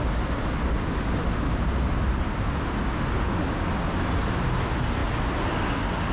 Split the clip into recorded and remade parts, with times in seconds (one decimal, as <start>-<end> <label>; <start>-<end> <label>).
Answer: 0.0-6.1 recorded